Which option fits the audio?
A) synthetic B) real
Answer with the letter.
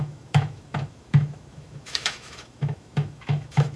A